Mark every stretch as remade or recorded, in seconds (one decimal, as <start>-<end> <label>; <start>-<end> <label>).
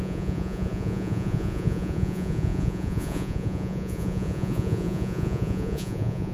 0.0-6.3 remade